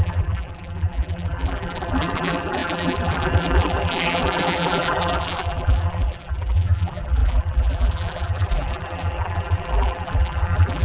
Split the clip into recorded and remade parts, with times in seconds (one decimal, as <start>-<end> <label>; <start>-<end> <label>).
0.0-10.8 remade